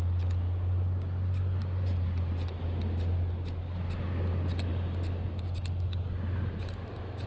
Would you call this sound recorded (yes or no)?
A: yes